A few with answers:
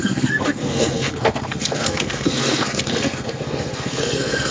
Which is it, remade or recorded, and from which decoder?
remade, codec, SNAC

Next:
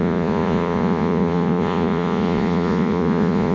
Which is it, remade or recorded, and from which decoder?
remade, vocoder, Vocos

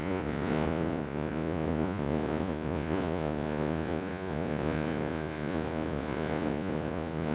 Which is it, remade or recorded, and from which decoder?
remade, vocoder, Vocos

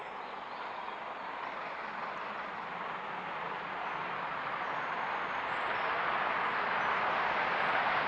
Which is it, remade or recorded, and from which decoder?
recorded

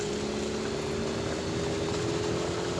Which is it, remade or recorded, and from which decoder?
recorded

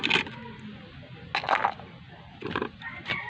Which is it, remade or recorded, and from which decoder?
recorded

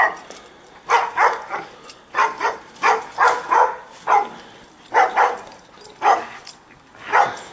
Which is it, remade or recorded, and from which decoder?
recorded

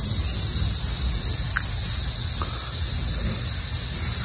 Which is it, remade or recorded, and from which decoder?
recorded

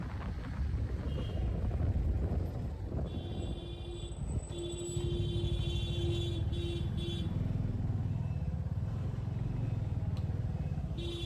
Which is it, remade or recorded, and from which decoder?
recorded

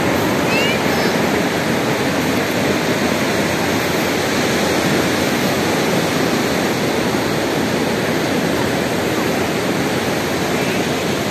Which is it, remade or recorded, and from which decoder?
recorded